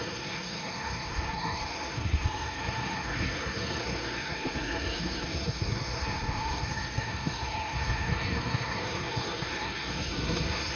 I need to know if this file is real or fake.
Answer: fake